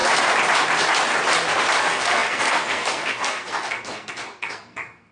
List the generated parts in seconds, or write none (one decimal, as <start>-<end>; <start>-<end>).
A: 1.8-5.1